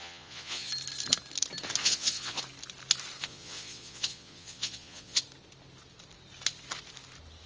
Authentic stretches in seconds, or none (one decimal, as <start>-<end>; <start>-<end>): 0.7-1.8; 2.4-3.2; 5.2-7.5